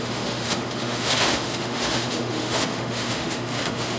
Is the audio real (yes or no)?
no